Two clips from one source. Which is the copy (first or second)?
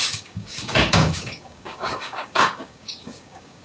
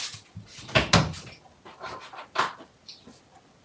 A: first